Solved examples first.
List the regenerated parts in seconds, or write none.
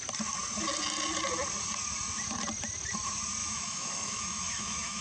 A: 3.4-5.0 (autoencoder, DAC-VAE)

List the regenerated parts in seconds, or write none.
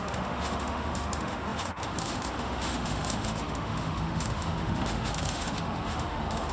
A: 0.0-6.5 (autoencoder, DAC-VAE)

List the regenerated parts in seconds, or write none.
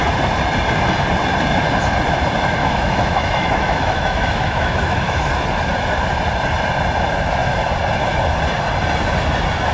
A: 2.6-5.3 (autoencoder, DAC-VAE)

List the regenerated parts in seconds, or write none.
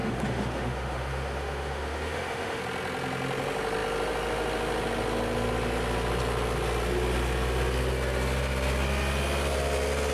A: 0.0-2.6 (autoencoder, DAC-VAE)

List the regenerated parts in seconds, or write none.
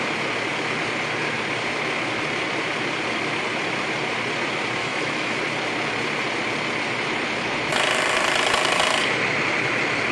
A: 4.8-5.4 (autoencoder, DAC-VAE)